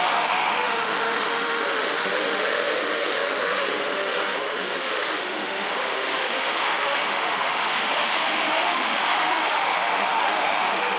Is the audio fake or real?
fake